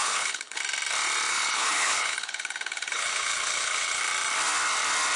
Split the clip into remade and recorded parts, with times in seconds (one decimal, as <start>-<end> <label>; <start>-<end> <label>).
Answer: 0.0-0.6 remade; 0.6-1.3 recorded; 1.3-4.0 remade; 4.0-5.2 recorded